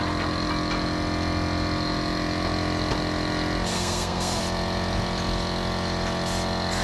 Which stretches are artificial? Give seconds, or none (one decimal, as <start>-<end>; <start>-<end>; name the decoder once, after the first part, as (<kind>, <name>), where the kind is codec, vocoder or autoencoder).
3.7-4.4 (codec, SNAC)